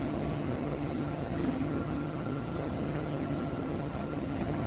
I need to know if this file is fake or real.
fake